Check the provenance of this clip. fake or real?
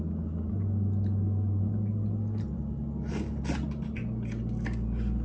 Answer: real